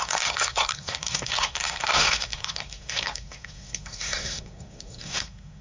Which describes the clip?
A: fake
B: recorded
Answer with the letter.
A